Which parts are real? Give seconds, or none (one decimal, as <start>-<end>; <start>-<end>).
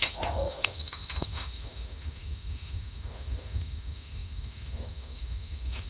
none